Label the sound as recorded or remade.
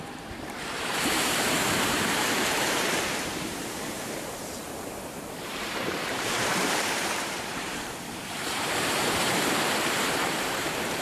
remade